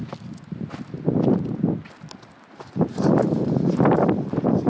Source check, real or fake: real